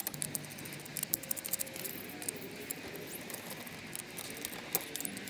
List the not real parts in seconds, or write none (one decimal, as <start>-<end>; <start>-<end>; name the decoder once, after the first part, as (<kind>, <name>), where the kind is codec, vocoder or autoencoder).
none